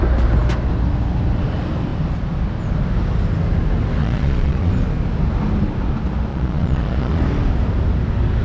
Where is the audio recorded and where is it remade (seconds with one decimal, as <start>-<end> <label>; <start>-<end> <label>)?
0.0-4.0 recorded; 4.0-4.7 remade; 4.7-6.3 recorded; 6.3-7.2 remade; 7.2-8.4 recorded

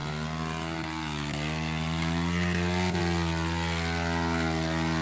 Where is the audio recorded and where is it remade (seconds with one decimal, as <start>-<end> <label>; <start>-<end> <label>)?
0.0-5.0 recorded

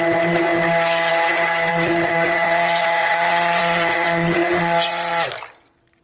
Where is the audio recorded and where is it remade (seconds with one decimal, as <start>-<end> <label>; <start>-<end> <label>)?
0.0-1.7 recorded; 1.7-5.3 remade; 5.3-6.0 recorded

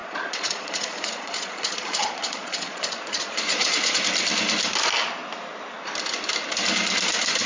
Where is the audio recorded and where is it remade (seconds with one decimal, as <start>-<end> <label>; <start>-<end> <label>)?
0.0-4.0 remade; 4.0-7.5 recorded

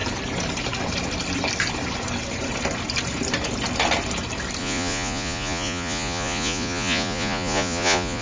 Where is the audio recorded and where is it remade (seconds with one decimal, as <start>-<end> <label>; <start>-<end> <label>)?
0.0-4.6 recorded; 4.6-8.2 remade

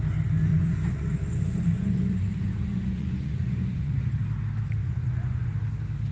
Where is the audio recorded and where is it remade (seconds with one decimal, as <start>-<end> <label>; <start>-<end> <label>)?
0.0-0.5 recorded; 0.5-4.2 remade; 4.2-4.8 recorded; 4.8-5.5 remade; 5.5-6.1 recorded

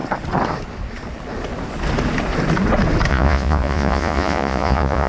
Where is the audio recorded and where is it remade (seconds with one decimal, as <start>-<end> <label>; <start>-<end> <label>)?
0.0-3.1 recorded; 3.1-5.1 remade